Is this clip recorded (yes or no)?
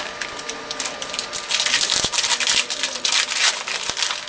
yes